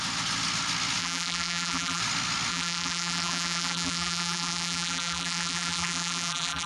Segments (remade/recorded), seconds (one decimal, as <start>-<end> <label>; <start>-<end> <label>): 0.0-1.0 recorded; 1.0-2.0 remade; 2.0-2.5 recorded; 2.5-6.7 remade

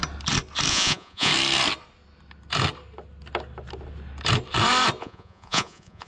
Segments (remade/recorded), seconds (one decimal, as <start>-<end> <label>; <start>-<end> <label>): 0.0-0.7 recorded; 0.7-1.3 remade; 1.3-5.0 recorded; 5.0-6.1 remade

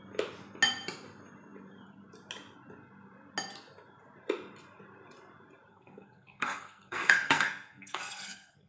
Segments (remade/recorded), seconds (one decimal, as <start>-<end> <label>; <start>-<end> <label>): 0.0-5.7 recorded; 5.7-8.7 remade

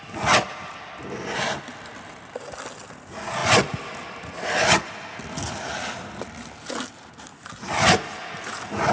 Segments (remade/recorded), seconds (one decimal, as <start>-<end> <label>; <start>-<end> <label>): 0.0-8.9 recorded

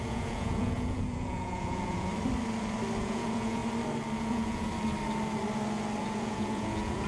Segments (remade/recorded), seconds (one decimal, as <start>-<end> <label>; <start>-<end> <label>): 0.0-2.1 remade; 2.1-3.0 recorded; 3.0-3.6 remade; 3.6-4.2 recorded; 4.2-4.7 remade; 4.7-6.0 recorded; 6.0-7.1 remade